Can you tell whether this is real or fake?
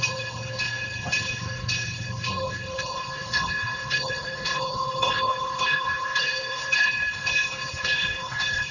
fake